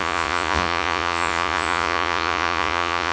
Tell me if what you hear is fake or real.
fake